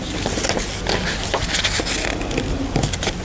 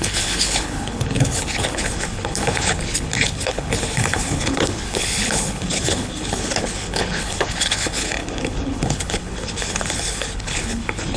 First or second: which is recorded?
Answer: first